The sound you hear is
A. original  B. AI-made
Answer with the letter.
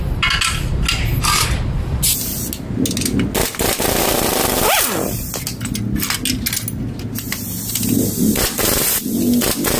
A